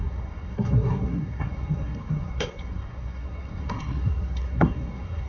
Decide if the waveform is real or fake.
fake